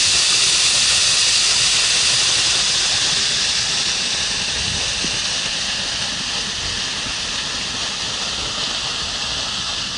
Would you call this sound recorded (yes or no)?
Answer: yes